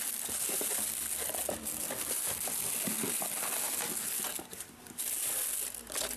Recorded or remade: recorded